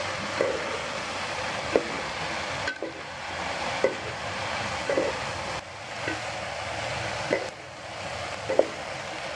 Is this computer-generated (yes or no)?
no